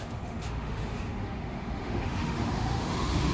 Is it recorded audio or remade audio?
remade